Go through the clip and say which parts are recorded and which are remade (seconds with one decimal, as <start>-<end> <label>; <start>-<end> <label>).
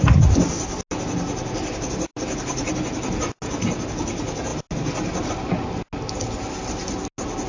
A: 0.0-7.5 recorded